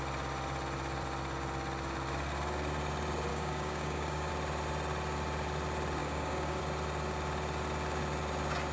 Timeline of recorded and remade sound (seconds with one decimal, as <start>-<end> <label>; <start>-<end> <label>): 0.0-3.3 recorded; 3.3-4.3 remade; 4.3-6.0 recorded; 6.0-6.6 remade; 6.6-8.7 recorded

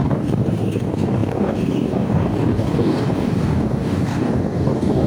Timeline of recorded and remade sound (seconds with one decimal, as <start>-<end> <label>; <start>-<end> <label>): 0.0-5.1 remade

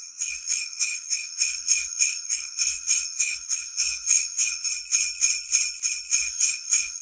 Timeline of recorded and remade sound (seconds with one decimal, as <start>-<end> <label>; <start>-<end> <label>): 0.0-4.7 remade; 4.7-6.2 recorded; 6.2-7.0 remade

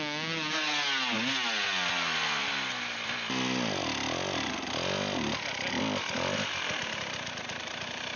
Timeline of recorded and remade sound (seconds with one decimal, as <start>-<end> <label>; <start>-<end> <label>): 0.0-8.2 recorded

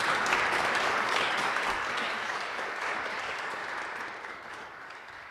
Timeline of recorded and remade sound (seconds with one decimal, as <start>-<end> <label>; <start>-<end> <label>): 0.0-3.6 remade; 3.6-4.3 recorded; 4.3-5.3 remade